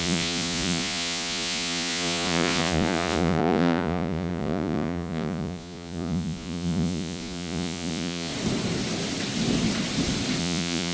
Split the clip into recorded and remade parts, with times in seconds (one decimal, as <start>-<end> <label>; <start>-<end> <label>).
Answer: 0.0-8.3 remade; 8.3-10.4 recorded; 10.4-10.9 remade